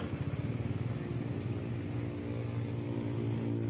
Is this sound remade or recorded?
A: recorded